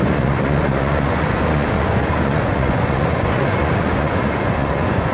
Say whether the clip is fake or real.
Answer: fake